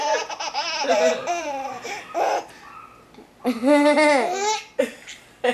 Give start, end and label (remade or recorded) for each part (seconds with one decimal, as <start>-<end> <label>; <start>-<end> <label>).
0.0-1.2 recorded; 1.2-1.9 remade; 1.9-5.5 recorded